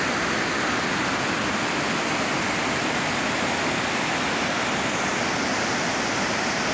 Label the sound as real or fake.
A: real